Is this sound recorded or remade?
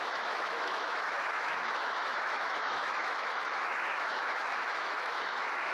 remade